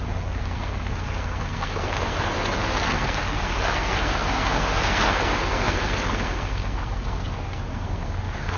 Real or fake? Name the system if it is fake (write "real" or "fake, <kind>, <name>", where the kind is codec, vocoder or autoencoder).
fake, codec, SNAC